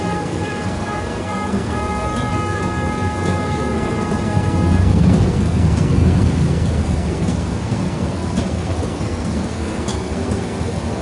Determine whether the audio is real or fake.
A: fake